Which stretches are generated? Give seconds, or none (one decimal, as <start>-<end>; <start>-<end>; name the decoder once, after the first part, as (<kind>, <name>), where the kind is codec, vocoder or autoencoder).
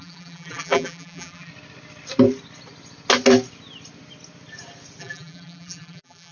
0.0-1.5 (vocoder, BigVGAN v2); 5.0-6.3